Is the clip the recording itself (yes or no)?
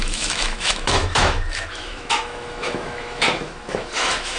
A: no